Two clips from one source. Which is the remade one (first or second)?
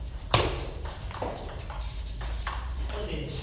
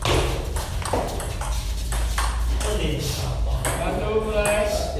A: first